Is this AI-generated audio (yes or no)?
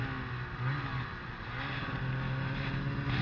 no